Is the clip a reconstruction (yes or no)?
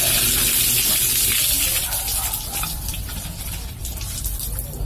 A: no